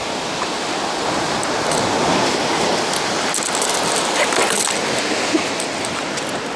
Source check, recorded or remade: recorded